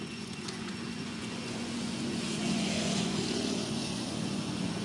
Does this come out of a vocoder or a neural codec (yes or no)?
yes